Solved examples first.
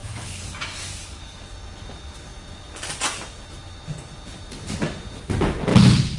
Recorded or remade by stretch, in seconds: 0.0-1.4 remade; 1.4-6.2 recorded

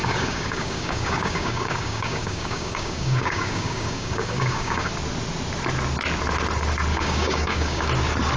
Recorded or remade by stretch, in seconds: 0.0-4.9 remade; 4.9-6.9 recorded; 6.9-7.9 remade; 7.9-8.4 recorded

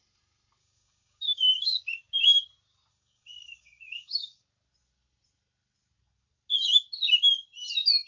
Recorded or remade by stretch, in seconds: 0.0-0.6 recorded; 0.6-1.7 remade; 1.7-2.9 recorded; 2.9-4.4 remade; 4.4-8.1 recorded

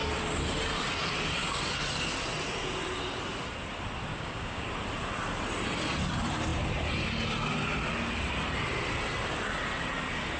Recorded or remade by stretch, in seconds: 0.0-4.1 recorded; 4.1-4.7 remade; 4.7-10.4 recorded

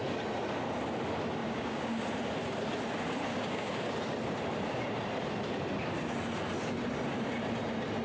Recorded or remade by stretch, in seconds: 0.0-1.4 recorded; 1.4-2.0 remade; 2.0-3.3 recorded; 3.3-3.9 remade; 3.9-8.0 recorded

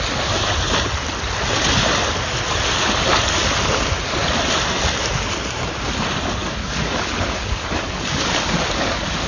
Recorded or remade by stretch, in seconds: 0.0-6.4 recorded; 6.4-9.3 remade